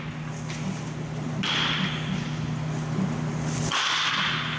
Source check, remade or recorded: recorded